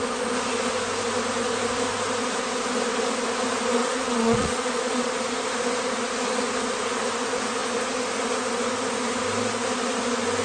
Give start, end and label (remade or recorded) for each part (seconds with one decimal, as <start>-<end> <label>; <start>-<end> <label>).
0.0-3.8 recorded; 3.8-5.2 remade; 5.2-10.4 recorded